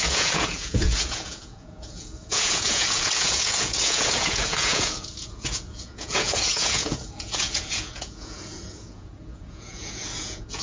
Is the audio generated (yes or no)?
yes